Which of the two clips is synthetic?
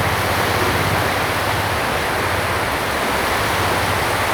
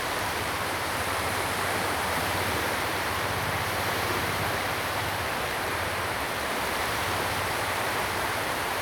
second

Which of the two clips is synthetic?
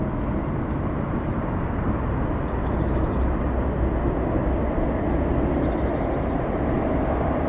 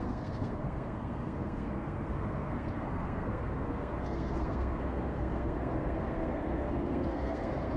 second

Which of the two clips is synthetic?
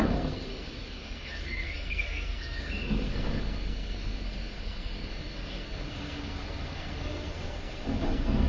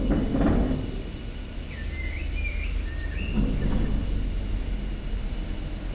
first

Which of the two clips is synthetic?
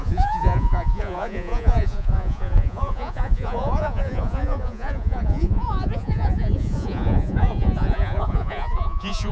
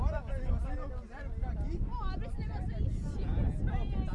first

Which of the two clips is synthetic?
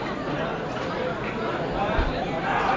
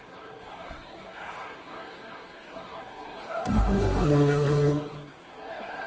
second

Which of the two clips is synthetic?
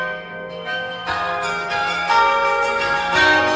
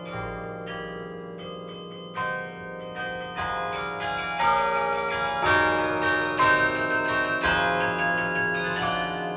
first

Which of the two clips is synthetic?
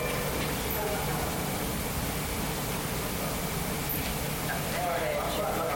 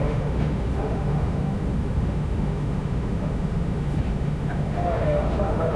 second